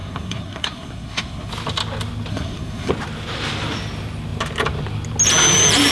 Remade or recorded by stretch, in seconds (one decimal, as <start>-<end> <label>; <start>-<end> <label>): 0.0-1.5 remade; 1.5-2.3 recorded; 2.3-2.9 remade; 2.9-5.9 recorded